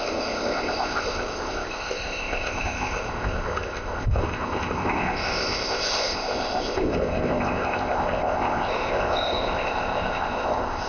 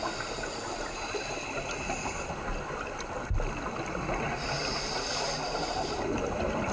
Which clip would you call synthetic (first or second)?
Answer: first